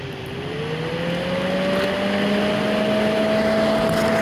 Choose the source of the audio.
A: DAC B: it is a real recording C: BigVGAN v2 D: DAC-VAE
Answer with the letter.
B